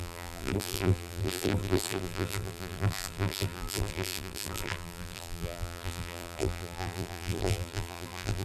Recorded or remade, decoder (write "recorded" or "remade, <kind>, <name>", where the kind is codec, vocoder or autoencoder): remade, vocoder, BigVGAN v2